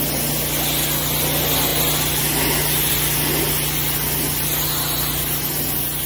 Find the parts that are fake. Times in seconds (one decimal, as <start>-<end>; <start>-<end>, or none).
none